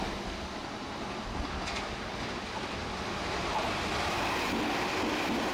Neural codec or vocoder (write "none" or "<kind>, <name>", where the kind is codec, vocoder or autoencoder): none